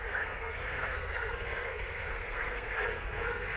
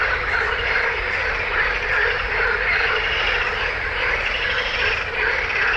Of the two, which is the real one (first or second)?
second